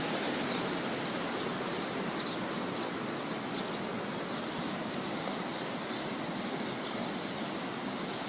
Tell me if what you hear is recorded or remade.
recorded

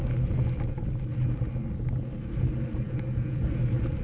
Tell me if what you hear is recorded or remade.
recorded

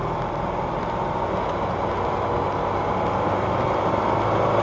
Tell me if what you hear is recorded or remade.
recorded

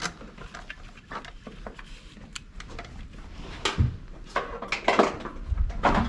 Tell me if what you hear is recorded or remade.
recorded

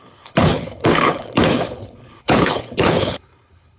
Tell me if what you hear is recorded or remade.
remade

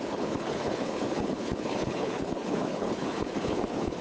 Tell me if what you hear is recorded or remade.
remade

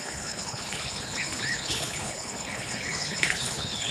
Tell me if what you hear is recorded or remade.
remade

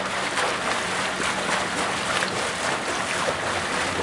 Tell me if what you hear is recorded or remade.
recorded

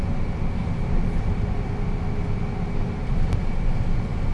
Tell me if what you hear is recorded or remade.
recorded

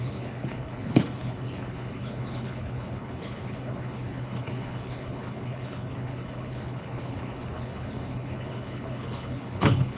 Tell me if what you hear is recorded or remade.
remade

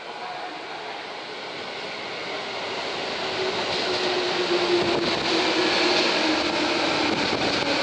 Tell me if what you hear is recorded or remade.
recorded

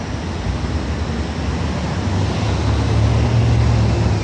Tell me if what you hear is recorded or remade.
recorded